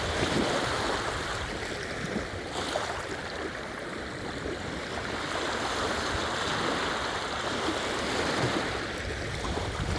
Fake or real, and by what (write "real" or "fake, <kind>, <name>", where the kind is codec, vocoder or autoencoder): real